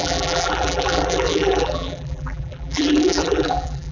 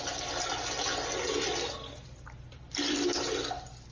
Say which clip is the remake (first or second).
first